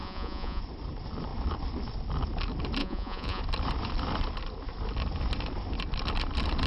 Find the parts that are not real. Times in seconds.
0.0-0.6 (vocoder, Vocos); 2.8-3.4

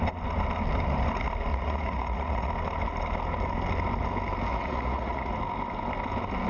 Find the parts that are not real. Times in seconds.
1.5-2.5 (vocoder, Vocos); 4.5-5.3

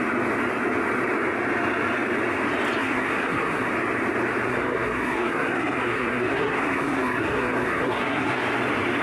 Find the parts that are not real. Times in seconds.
2.8-3.7 (codec, SNAC); 4.5-8.4

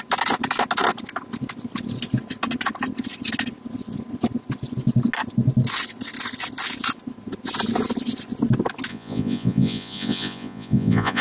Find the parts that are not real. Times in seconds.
8.9-11.2 (vocoder, Vocos)

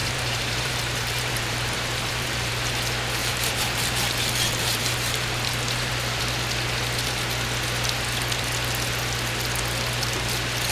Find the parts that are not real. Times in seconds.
0.0-2.5 (vocoder, BigVGAN v2); 3.2-6.2